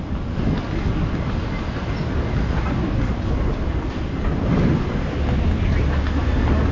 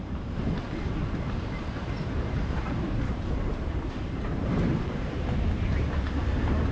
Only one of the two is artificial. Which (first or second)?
second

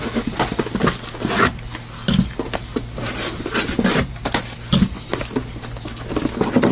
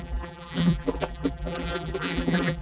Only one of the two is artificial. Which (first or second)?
second